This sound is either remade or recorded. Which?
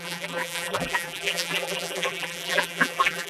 remade